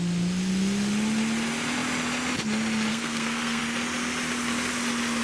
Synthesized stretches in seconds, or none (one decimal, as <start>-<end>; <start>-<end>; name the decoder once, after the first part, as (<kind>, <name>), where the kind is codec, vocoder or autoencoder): 2.9-3.6 (codec, SNAC)

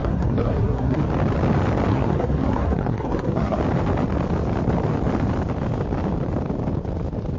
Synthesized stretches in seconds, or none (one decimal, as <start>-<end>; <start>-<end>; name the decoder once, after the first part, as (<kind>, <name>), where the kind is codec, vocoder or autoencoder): 0.0-1.0 (codec, SNAC); 1.9-3.6

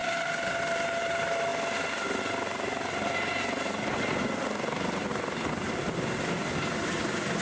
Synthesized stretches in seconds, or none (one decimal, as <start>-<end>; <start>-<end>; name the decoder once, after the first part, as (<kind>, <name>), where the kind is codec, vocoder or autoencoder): none

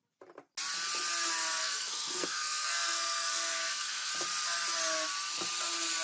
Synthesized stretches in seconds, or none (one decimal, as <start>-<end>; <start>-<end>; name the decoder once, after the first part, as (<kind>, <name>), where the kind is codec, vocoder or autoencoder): 1.6-4.1 (codec, SNAC)

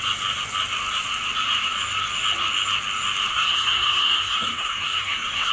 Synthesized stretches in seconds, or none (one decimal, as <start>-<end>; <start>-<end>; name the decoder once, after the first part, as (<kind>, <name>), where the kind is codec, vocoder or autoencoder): 3.3-5.5 (codec, SNAC)

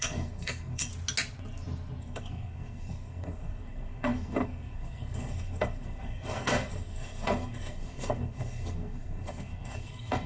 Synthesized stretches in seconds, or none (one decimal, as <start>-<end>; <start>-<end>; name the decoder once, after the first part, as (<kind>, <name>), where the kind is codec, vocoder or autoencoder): 0.0-0.9 (codec, SNAC); 2.0-10.3